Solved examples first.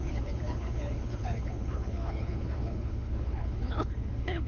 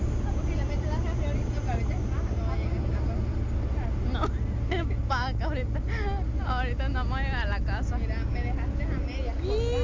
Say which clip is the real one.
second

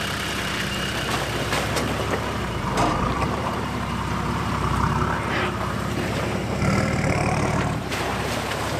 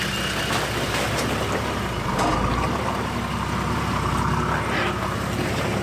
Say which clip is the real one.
second